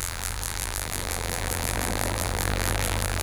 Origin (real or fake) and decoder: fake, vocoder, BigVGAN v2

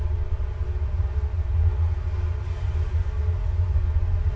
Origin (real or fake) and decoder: real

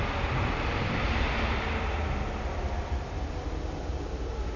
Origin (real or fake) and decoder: real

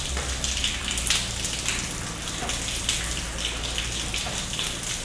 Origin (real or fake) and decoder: real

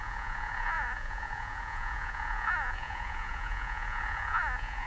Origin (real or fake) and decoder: fake, vocoder, Vocos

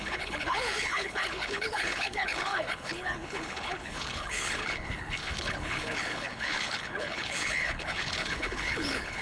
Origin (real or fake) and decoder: fake, codec, HILCodec